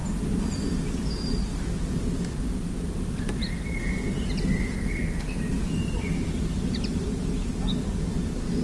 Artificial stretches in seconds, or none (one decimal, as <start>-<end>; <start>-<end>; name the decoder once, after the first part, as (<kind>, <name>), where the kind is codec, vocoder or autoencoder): 4.7-5.4 (codec, SNAC)